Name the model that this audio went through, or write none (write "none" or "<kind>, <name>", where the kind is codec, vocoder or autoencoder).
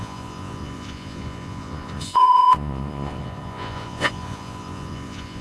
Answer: vocoder, Vocos